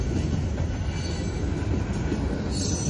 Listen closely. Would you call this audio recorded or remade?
recorded